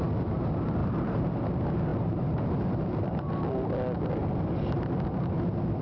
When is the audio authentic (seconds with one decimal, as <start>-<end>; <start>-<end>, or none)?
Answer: 0.0-0.8; 1.4-1.9; 3.8-5.8